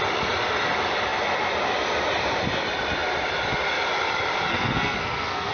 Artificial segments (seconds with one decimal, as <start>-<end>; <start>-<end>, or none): 4.5-5.5